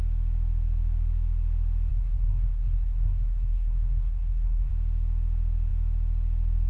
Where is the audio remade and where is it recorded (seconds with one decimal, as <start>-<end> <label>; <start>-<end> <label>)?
0.0-1.9 recorded; 1.9-4.7 remade; 4.7-6.7 recorded